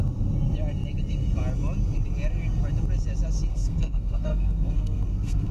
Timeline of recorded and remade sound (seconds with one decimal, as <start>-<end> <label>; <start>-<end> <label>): 0.0-3.5 recorded; 3.5-5.5 remade